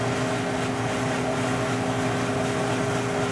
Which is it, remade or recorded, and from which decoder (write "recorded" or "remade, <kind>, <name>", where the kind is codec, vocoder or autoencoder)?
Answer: recorded